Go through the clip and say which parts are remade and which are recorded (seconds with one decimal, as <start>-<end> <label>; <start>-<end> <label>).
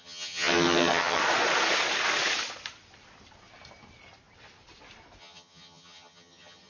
0.0-1.2 remade; 1.2-5.2 recorded; 5.2-6.7 remade